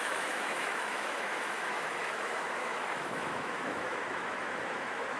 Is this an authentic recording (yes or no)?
no